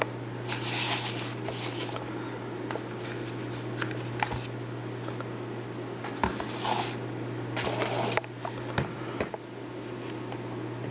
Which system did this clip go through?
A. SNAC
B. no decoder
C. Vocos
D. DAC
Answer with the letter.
B